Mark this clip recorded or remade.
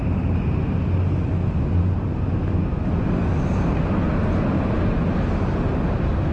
recorded